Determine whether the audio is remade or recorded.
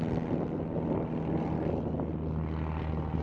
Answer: recorded